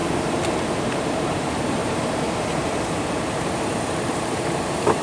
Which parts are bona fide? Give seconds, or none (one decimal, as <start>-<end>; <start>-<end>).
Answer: 0.0-0.8